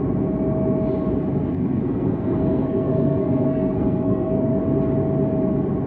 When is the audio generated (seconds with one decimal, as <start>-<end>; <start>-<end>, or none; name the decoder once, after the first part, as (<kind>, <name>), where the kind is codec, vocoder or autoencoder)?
1.4-4.6 (codec, SNAC)